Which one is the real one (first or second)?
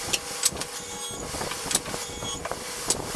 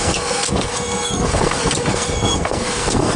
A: first